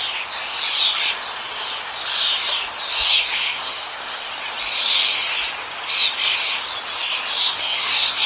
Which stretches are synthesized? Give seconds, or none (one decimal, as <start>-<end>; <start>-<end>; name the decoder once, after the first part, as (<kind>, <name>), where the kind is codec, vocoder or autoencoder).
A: 2.8-4.3 (codec, SNAC); 7.4-8.3